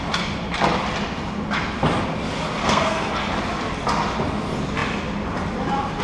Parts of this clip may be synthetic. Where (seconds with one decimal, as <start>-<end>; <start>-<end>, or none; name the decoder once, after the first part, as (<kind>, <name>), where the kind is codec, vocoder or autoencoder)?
2.6-3.1 (codec, SNAC)